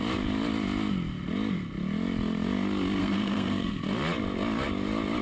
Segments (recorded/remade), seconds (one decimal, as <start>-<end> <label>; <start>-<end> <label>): 0.0-3.0 recorded; 3.0-3.8 remade; 3.8-5.2 recorded